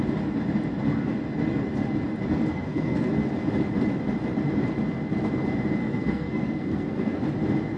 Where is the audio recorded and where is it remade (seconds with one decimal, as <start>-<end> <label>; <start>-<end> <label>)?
0.0-2.5 recorded; 2.5-3.1 remade; 3.1-5.8 recorded; 5.8-7.2 remade; 7.2-7.8 recorded